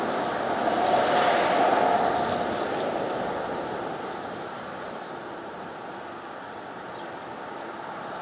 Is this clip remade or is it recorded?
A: remade